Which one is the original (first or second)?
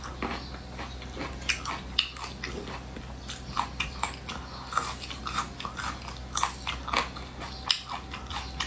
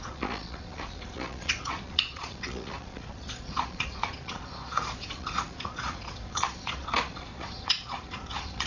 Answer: first